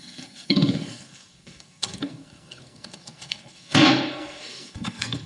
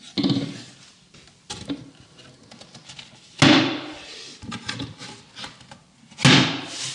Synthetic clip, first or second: first